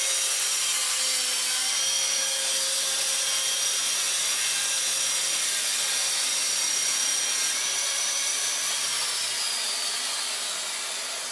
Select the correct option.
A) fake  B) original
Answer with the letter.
B